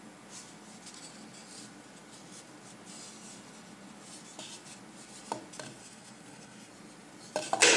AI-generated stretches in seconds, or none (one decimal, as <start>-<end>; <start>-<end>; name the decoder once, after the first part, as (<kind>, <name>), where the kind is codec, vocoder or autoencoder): 5.8-6.7 (codec, SNAC)